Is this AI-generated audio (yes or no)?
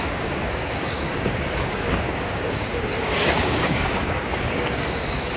yes